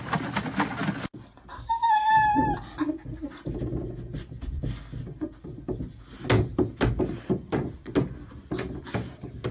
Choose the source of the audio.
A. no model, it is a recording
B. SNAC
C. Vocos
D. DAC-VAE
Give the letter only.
A